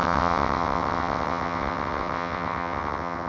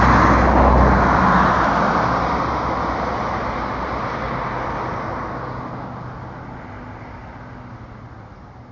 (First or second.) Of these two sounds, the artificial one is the first